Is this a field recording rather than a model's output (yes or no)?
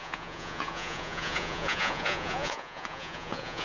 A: no